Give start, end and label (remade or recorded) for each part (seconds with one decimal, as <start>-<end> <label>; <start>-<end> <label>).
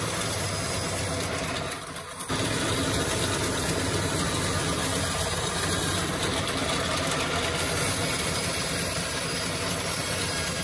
0.0-4.9 recorded; 4.9-6.1 remade; 6.1-6.6 recorded; 6.6-7.1 remade; 7.1-10.6 recorded